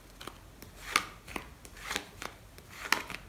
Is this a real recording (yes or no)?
yes